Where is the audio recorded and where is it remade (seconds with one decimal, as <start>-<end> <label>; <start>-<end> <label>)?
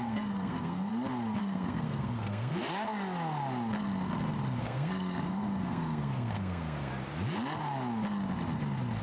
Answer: 0.0-0.9 remade; 0.9-1.4 recorded; 1.4-2.5 remade; 2.5-4.6 recorded; 4.6-6.9 remade; 6.9-9.0 recorded